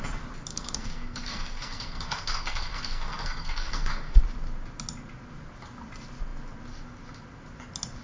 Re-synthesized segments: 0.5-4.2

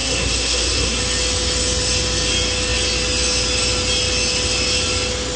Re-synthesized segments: 0.0-1.0

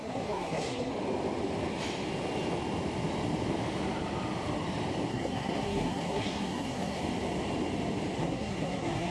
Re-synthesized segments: 0.0-0.9; 5.1-7.0; 8.2-9.1